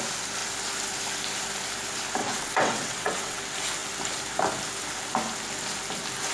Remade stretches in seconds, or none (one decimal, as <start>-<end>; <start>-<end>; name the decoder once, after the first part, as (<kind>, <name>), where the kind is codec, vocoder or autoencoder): 2.2-3.4 (vocoder, WaveNeXt)